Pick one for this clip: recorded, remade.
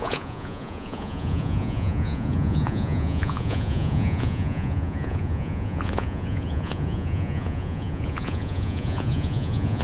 remade